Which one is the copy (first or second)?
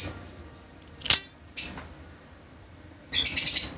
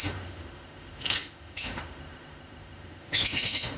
second